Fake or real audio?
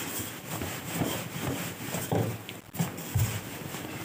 real